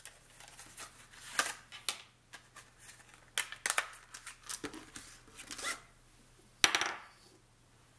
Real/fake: real